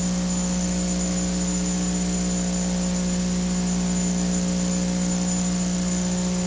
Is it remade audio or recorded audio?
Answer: recorded